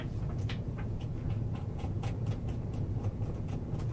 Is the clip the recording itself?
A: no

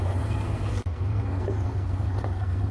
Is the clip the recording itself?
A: no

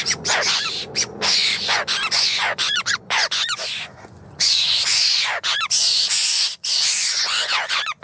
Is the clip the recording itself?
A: no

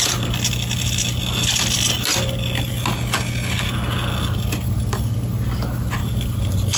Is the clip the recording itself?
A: yes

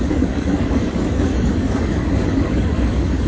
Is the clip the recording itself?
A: no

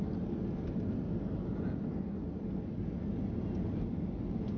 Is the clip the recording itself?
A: yes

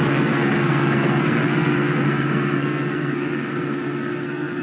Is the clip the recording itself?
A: no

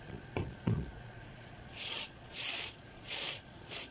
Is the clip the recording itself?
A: no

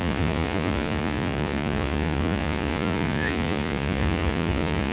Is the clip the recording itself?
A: no